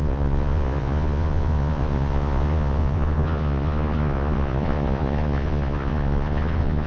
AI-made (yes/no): yes